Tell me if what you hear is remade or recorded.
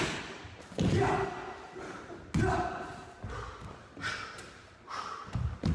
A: recorded